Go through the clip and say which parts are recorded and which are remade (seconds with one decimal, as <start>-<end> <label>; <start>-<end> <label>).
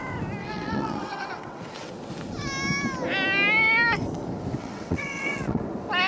0.0-0.4 recorded; 0.4-1.9 remade; 1.9-4.6 recorded; 4.6-5.6 remade; 5.6-6.1 recorded